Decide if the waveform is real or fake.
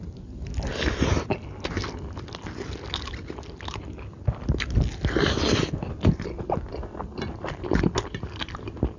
real